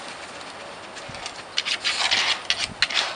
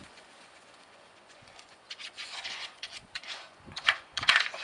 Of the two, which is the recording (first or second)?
first